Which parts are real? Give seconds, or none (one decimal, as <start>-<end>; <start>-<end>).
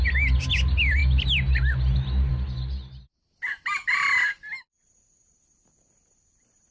0.0-6.7